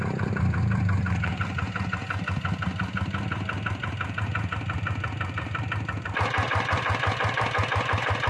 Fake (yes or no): yes